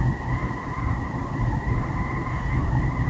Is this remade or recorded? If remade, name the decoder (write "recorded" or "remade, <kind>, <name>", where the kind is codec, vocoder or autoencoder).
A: recorded